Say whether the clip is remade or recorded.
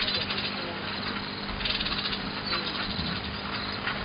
recorded